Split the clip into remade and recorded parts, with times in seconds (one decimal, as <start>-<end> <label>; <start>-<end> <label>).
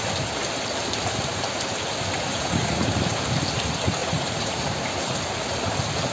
0.0-2.3 recorded; 2.3-3.0 remade; 3.0-4.0 recorded; 4.0-4.8 remade; 4.8-6.1 recorded